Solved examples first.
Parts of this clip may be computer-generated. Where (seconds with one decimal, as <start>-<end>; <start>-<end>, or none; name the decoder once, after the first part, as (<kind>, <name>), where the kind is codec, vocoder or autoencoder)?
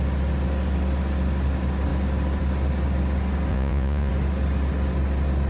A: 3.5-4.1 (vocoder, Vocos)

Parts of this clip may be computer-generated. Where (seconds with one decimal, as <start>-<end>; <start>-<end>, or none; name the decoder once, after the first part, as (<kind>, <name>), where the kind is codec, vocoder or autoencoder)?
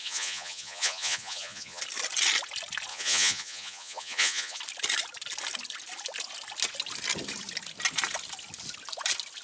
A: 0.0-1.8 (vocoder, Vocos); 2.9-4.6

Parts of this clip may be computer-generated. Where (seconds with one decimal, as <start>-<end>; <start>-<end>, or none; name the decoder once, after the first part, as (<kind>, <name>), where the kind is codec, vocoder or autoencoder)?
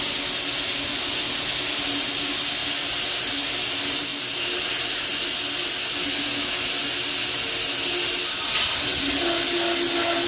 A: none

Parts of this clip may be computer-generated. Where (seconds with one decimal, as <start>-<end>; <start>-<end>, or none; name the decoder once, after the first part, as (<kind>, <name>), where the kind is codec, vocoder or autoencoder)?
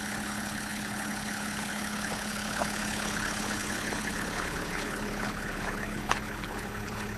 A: 0.0-7.2 (codec, HILCodec)